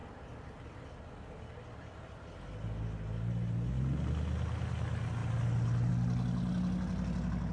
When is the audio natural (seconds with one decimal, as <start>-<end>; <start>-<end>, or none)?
0.0-7.5